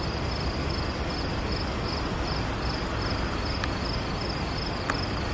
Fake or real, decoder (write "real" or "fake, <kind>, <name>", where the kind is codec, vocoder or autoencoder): real